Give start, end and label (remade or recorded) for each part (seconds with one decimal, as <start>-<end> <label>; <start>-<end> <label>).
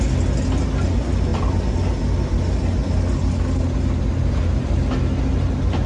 0.0-5.9 recorded